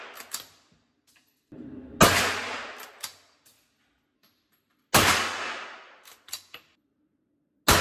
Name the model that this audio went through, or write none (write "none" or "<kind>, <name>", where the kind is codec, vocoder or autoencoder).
none